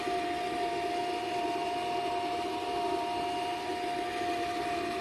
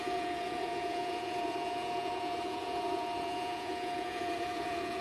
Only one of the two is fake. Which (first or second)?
second